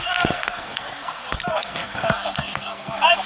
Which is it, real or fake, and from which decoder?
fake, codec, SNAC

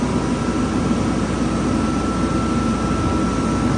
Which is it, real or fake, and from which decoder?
real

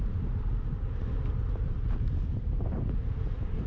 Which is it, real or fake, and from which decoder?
fake, vocoder, BigVGAN v2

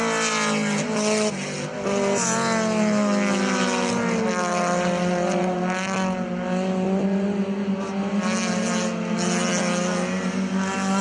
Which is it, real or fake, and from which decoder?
real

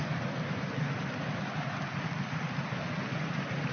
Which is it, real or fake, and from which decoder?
real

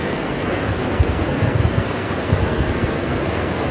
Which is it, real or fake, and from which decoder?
fake, codec, SNAC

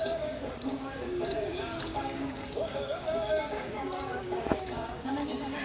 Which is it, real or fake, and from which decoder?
fake, codec, DAC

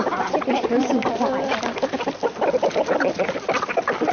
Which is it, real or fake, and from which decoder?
real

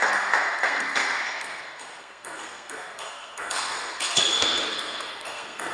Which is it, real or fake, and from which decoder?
fake, codec, SNAC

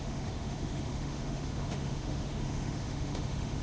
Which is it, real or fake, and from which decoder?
fake, autoencoder, DAC-VAE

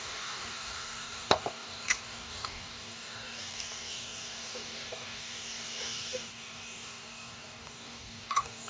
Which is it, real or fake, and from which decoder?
fake, codec, DAC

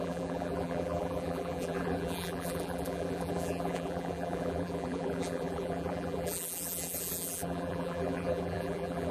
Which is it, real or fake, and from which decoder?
fake, vocoder, BigVGAN v2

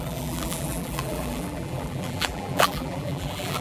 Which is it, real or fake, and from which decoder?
fake, vocoder, BigVGAN v2